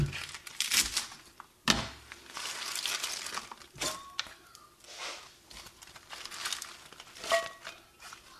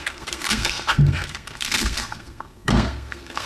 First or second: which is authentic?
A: first